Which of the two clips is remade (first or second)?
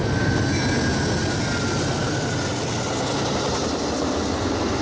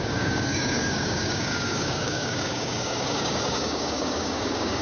second